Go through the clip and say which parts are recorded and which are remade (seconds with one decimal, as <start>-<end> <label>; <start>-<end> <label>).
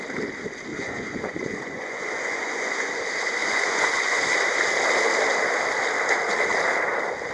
0.0-0.7 recorded; 0.7-3.0 remade; 3.0-3.4 recorded; 3.4-4.2 remade; 4.2-7.3 recorded